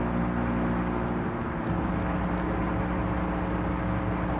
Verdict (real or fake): real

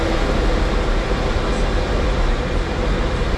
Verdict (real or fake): real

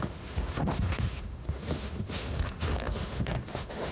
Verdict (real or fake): fake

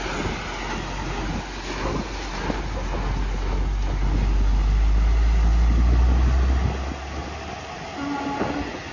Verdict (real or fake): real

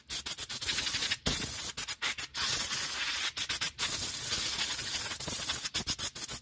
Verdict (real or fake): real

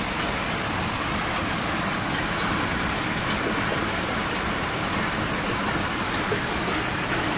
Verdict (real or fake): real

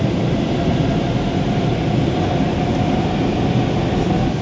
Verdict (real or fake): real